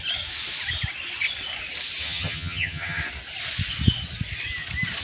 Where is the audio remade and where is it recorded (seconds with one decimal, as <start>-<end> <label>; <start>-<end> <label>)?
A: 0.0-2.0 recorded; 2.0-3.0 remade; 3.0-5.0 recorded